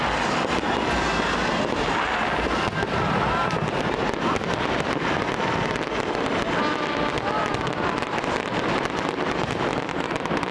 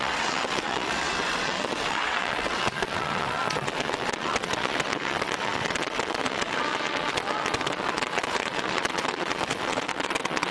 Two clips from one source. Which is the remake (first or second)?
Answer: second